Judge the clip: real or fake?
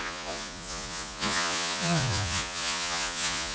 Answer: fake